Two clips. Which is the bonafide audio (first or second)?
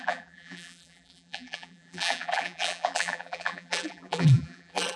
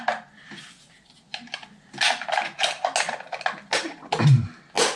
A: second